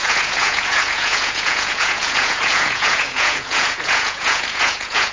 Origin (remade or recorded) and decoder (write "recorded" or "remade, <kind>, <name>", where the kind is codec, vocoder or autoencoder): remade, vocoder, Vocos